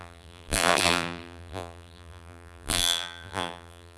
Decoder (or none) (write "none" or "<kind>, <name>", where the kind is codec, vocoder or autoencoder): vocoder, BigVGAN v2